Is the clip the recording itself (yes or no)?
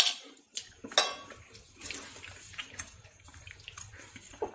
yes